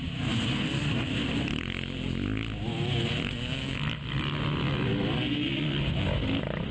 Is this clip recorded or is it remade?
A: recorded